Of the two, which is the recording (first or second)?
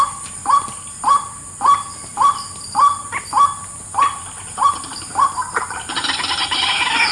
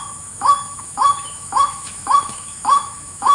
first